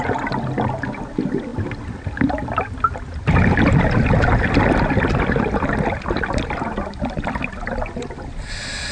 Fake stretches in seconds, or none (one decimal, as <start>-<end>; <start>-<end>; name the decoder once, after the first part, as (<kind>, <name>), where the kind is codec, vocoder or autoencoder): none